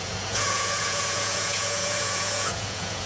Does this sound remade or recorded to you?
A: remade